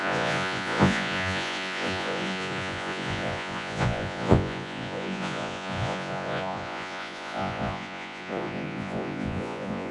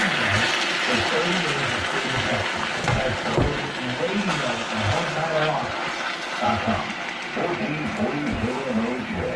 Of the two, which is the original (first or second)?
second